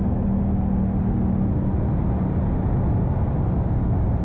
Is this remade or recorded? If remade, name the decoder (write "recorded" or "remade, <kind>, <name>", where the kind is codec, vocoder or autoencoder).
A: recorded